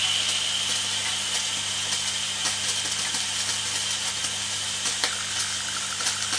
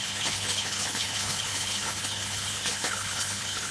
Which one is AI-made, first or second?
second